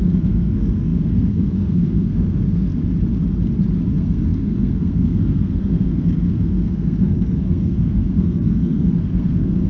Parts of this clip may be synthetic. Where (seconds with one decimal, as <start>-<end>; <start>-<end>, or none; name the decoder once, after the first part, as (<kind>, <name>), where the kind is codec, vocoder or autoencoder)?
0.0-2.7 (codec, SNAC); 3.9-9.7